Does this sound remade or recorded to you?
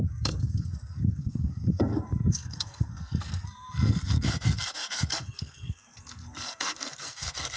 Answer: remade